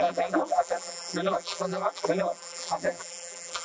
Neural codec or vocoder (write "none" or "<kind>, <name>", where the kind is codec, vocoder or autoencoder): vocoder, BigVGAN v2